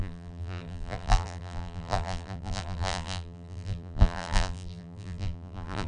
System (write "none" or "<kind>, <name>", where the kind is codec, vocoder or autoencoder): vocoder, BigVGAN v2